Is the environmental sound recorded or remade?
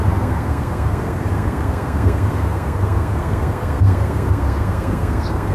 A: remade